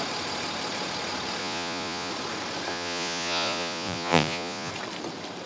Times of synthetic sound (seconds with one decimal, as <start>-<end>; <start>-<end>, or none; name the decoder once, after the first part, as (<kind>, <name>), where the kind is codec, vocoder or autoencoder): 1.4-2.1 (vocoder, Vocos); 2.7-4.7